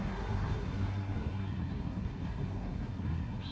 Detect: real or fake fake